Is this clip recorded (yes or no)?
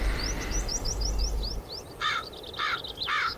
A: yes